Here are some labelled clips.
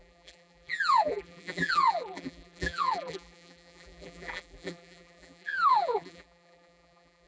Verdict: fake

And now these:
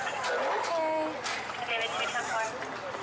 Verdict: real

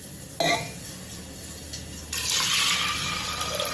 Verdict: real